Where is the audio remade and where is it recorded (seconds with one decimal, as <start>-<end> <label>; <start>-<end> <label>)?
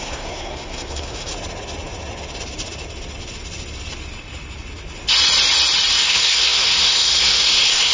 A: 0.0-1.3 remade; 1.3-6.0 recorded; 6.0-7.9 remade